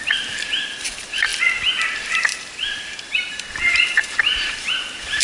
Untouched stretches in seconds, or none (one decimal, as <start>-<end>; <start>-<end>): 1.3-1.8